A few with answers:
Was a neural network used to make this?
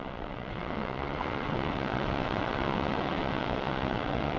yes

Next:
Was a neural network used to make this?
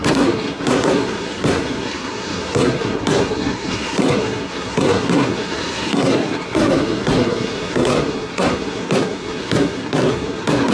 yes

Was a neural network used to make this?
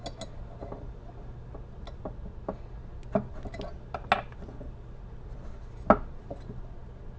no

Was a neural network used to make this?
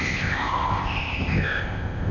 yes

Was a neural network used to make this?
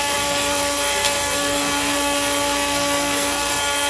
yes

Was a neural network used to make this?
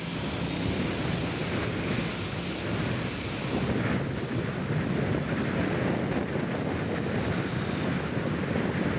no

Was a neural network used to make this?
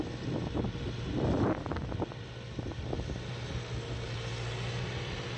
no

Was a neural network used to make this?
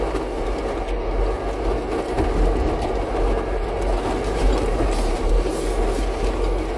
no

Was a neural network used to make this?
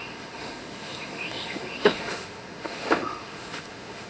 yes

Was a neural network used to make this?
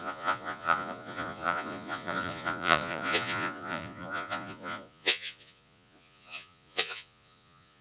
yes